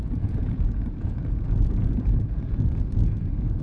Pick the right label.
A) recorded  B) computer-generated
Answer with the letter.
B